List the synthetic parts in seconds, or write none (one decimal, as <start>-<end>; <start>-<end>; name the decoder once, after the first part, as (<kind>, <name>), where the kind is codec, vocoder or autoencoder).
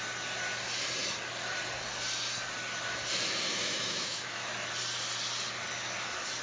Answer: 3.5-4.5 (autoencoder, DAC-VAE)